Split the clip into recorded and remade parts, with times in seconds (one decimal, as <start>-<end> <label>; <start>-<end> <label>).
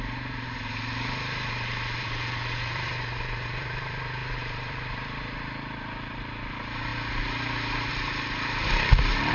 0.0-6.9 remade; 6.9-7.9 recorded; 7.9-9.3 remade